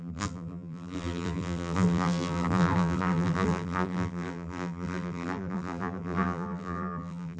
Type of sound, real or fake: fake